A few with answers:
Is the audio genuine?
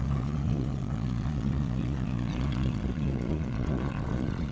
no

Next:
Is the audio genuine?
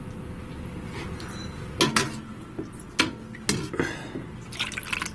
yes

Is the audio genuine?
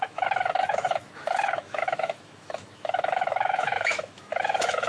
no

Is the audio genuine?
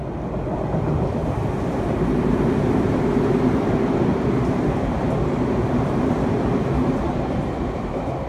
no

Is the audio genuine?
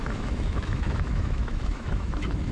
no